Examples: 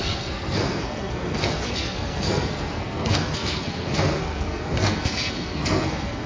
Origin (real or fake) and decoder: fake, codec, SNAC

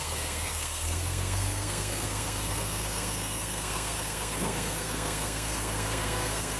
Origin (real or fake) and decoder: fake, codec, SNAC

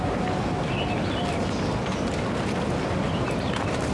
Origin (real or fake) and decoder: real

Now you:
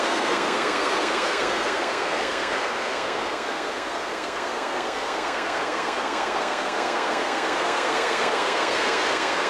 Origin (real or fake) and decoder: fake, codec, SNAC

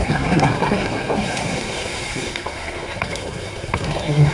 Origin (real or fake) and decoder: fake, codec, SNAC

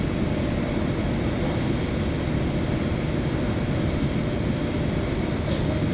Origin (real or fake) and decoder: real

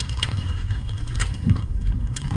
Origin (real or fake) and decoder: fake, codec, SNAC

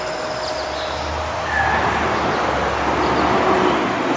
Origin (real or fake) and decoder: real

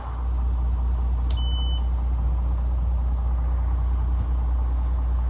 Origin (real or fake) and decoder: real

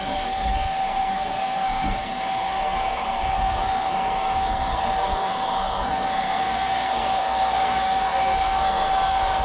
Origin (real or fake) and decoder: fake, codec, SNAC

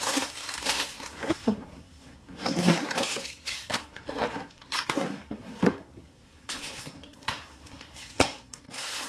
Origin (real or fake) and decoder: fake, codec, SNAC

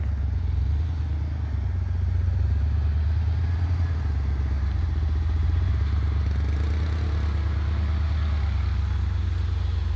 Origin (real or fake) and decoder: real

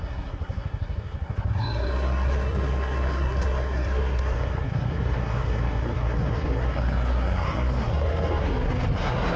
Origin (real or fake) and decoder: fake, codec, SNAC